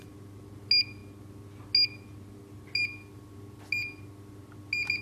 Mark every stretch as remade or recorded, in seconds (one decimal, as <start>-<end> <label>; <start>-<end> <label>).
0.0-5.0 recorded